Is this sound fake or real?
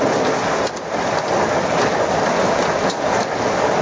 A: real